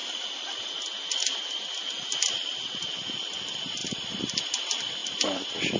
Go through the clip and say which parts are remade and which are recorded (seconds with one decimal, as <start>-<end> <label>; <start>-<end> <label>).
0.0-3.8 recorded; 3.8-4.4 remade; 4.4-5.8 recorded